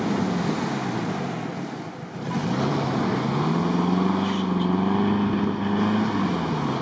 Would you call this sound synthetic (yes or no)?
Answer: no